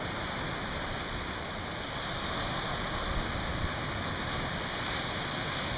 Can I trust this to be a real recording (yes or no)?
yes